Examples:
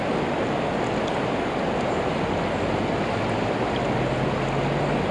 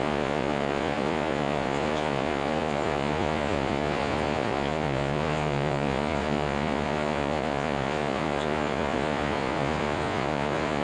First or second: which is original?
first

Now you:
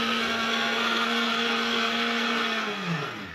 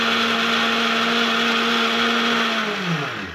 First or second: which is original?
second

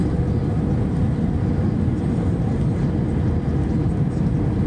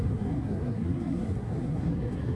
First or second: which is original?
first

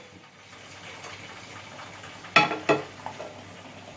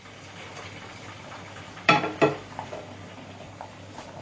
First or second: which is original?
first